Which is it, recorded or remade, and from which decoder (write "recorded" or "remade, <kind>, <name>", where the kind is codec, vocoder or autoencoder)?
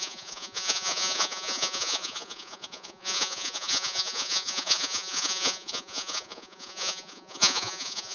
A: remade, vocoder, Vocos